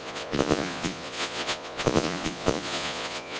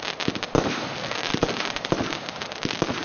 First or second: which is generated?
first